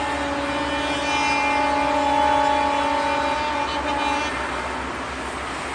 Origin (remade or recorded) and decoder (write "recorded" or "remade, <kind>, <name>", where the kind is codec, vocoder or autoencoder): recorded